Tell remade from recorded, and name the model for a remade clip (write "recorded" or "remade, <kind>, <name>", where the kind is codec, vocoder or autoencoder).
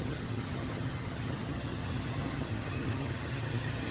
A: remade, vocoder, HiFi-GAN